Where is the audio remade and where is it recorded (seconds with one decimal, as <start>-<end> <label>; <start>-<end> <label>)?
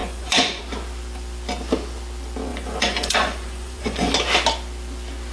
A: 0.0-0.6 remade; 0.6-2.5 recorded; 2.5-4.1 remade; 4.1-5.3 recorded